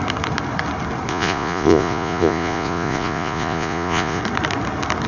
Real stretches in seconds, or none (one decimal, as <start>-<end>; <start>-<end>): 0.0-1.1; 4.2-5.1